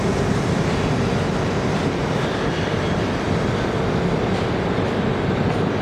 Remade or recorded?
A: recorded